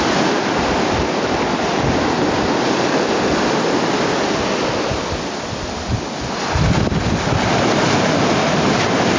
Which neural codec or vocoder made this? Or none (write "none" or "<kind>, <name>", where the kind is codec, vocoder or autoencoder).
none